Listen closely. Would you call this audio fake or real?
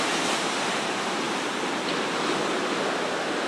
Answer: real